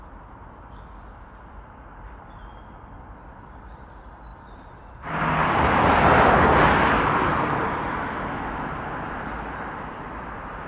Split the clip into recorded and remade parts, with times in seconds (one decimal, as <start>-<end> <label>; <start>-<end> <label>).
0.0-10.7 recorded